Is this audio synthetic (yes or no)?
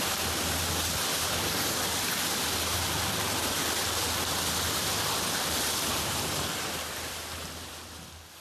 no